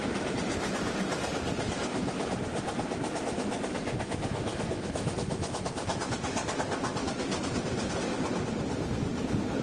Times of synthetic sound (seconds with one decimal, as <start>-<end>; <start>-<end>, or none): 4.5-5.7